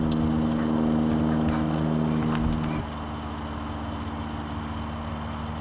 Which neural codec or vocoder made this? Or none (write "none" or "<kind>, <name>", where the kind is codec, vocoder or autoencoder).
none